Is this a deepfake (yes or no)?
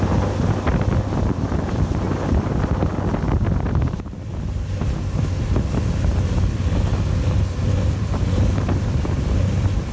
no